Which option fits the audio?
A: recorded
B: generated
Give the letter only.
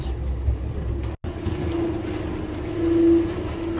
A